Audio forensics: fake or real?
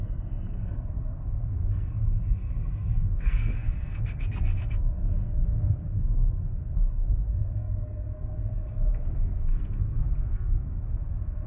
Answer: fake